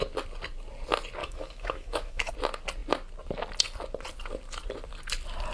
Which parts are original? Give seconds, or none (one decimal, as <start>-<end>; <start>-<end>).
0.0-1.2; 2.3-5.5